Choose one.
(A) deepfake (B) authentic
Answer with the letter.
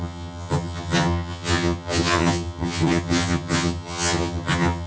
A